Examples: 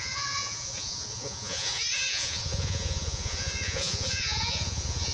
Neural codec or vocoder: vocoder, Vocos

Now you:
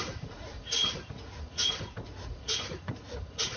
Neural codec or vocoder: vocoder, Vocos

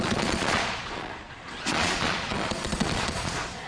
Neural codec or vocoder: vocoder, Vocos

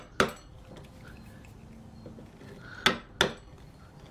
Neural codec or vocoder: none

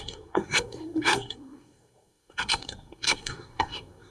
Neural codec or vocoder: codec, SNAC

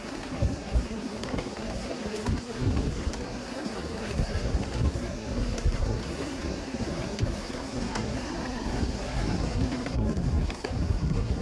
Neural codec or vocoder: codec, SNAC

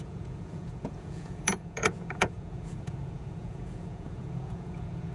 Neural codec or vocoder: vocoder, Vocos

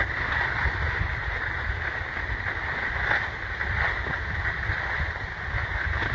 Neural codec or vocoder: none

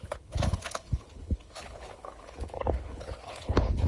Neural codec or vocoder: codec, HILCodec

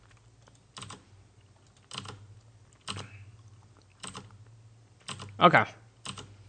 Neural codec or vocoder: none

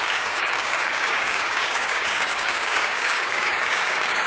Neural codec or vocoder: codec, DAC